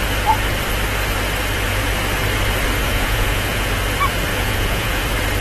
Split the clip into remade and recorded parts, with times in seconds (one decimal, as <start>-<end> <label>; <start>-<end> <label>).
0.0-2.8 recorded; 2.8-3.7 remade; 3.7-4.3 recorded; 4.3-5.0 remade; 5.0-5.4 recorded

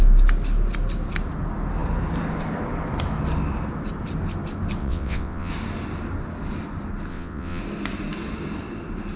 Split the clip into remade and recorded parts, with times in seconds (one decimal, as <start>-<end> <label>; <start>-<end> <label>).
0.0-4.8 recorded; 4.8-5.5 remade; 5.5-7.1 recorded; 7.1-7.6 remade; 7.6-9.2 recorded

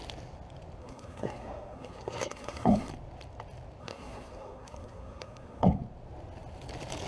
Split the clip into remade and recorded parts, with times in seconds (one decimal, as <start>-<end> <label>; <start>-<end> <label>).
0.0-0.8 recorded; 0.8-2.9 remade; 2.9-3.8 recorded; 3.8-5.8 remade; 5.8-7.1 recorded

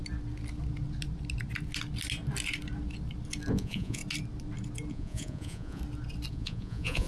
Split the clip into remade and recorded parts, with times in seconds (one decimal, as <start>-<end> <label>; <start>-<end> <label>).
0.0-3.5 recorded; 3.5-4.0 remade; 4.0-4.9 recorded; 4.9-5.8 remade; 5.8-6.3 recorded; 6.3-7.1 remade